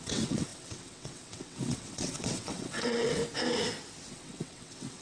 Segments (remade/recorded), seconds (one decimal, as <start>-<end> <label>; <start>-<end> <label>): 0.0-3.2 remade; 3.2-4.1 recorded; 4.1-5.0 remade